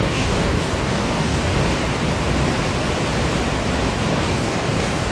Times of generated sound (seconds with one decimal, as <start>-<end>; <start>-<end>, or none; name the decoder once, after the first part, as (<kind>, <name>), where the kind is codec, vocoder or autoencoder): 0.0-1.5 (codec, DAC); 4.1-5.1